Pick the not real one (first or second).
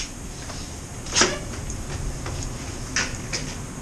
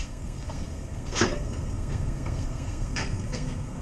second